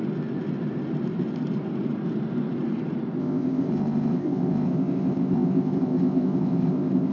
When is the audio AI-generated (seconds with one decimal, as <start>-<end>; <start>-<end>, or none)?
3.2-7.1